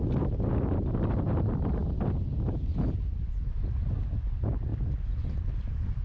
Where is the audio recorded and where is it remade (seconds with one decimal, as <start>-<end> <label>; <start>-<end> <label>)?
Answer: 0.0-6.0 recorded